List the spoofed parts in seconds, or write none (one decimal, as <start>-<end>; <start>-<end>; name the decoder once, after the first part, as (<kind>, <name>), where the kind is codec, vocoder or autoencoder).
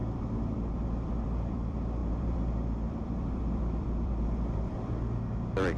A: 0.0-5.8 (vocoder, BigVGAN v2)